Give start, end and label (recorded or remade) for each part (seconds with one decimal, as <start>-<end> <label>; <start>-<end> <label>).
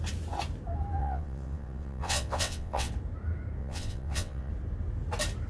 0.0-1.0 recorded; 1.0-2.9 remade; 2.9-3.6 recorded; 3.6-4.5 remade; 4.5-5.5 recorded